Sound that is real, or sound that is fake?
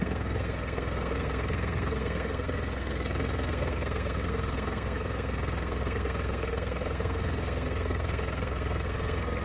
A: fake